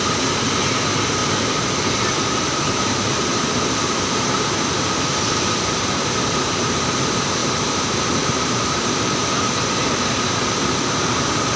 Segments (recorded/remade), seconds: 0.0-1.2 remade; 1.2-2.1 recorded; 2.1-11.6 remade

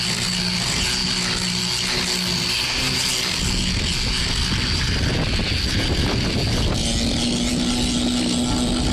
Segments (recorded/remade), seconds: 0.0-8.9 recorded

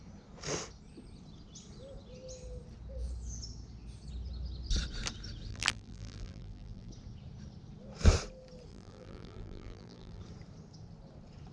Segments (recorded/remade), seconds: 0.0-5.5 recorded; 5.5-6.9 remade; 6.9-8.7 recorded; 8.7-10.2 remade; 10.2-11.5 recorded

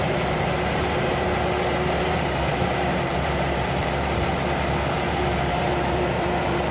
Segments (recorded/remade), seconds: 0.0-1.3 remade; 1.3-2.0 recorded; 2.0-6.7 remade

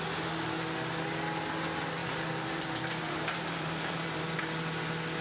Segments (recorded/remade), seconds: 0.0-2.0 recorded; 2.0-4.4 remade; 4.4-5.2 recorded

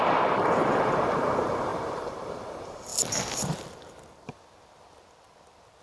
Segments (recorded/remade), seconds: 0.0-2.9 remade; 2.9-5.8 recorded